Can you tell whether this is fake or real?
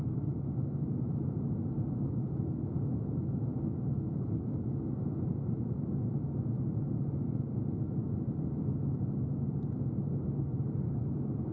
real